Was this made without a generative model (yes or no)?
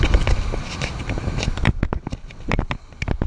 yes